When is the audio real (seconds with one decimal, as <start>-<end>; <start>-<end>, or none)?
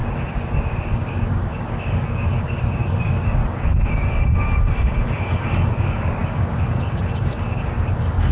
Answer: 3.4-3.9